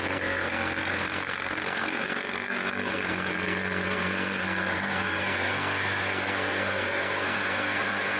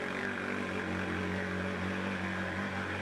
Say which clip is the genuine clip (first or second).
second